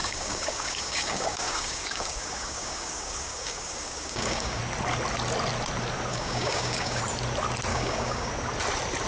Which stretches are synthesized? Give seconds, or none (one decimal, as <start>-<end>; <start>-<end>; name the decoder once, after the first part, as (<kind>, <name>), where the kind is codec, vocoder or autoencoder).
0.0-4.6 (codec, DAC); 6.1-7.0; 7.7-8.3